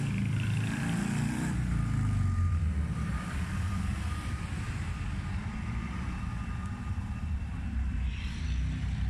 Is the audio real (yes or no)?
no